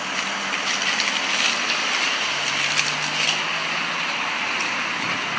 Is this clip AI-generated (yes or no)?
no